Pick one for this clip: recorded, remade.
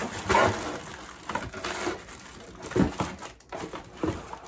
recorded